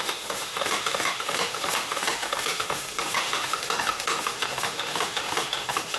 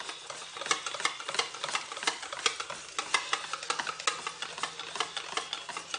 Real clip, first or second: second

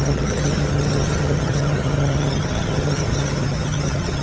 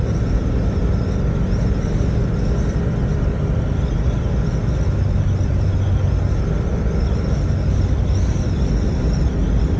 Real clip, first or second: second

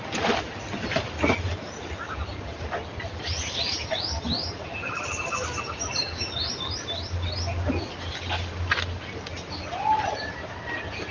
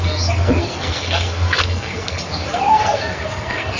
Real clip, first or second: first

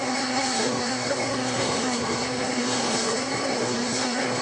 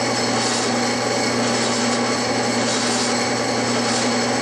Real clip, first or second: second